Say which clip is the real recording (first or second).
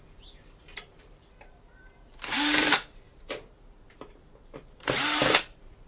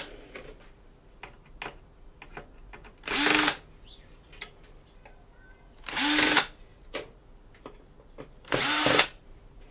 second